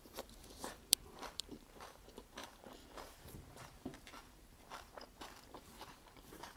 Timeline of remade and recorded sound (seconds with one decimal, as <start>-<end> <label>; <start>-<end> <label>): 0.0-6.6 remade